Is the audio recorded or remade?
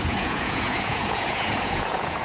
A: remade